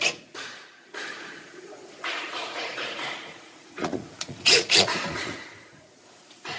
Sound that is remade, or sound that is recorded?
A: remade